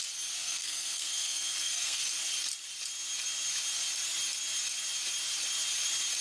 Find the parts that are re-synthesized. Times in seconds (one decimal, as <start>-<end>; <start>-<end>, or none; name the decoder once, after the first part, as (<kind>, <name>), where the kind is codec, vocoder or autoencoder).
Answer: 0.4-2.0 (codec, SNAC)